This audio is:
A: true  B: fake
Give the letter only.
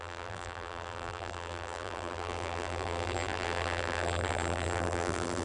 B